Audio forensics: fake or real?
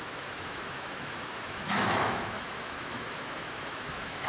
fake